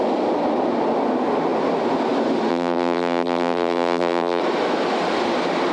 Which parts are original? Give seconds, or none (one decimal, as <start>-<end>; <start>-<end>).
0.0-2.5; 4.4-5.7